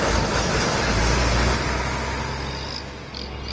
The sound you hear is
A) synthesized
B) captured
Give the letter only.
B